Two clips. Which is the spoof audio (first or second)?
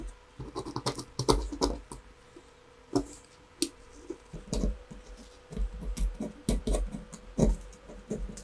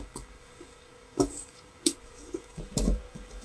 second